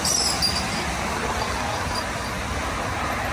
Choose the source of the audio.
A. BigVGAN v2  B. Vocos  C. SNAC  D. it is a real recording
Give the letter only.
D